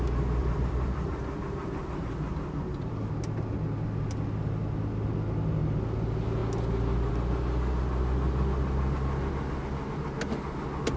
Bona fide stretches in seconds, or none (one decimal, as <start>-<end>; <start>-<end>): 0.0-0.4; 3.1-11.0